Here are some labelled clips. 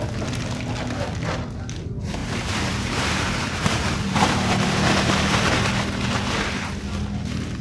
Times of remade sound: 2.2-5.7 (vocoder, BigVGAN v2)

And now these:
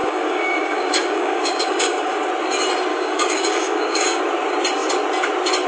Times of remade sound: 0.0-2.3 (codec, DAC); 2.9-4.2

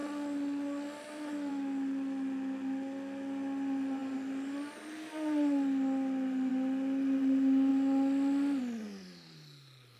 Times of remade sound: none

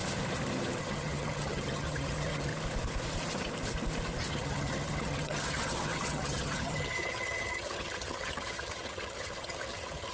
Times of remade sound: 0.8-2.5 (vocoder, HiFi-GAN); 4.3-10.1

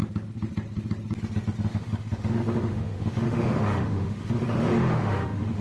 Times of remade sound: 1.7-5.6 (autoencoder, DAC-VAE)

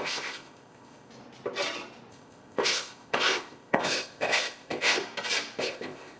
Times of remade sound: 0.0-1.1 (codec, ZipCodec); 2.1-5.0; 5.6-6.2